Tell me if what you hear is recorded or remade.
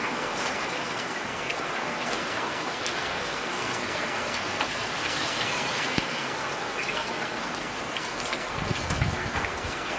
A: remade